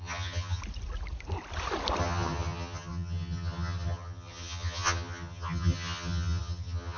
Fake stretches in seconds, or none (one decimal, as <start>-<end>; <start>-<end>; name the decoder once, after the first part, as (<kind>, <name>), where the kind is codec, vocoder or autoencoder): 0.0-0.6 (vocoder, HiFi-GAN); 2.0-7.0